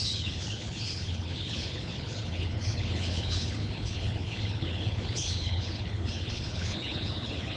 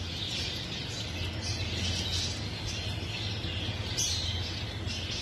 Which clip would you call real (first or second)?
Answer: second